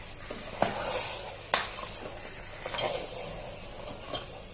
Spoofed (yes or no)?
no